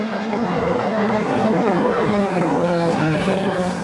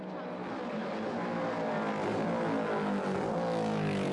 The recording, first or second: second